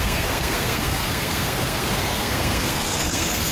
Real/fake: fake